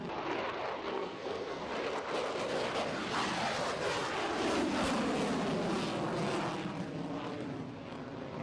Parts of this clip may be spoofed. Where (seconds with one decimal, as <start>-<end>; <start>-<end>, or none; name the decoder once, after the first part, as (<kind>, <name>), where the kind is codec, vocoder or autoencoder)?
0.9-1.6 (codec, SNAC)